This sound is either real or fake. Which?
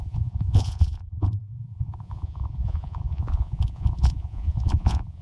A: fake